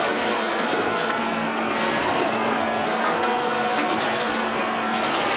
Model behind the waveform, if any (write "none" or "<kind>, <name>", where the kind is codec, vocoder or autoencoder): codec, SNAC